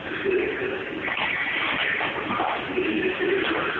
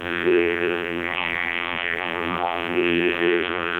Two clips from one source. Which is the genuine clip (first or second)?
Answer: first